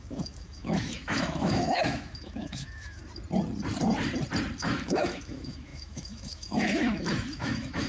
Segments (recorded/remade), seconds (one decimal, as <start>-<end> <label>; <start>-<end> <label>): 0.0-3.0 remade; 3.0-4.6 recorded; 4.6-7.9 remade